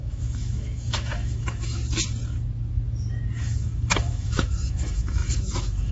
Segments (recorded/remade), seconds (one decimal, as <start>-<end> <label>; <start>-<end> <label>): 0.0-1.8 remade; 1.8-3.4 recorded; 3.4-5.9 remade